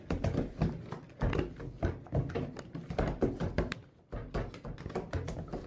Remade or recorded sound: recorded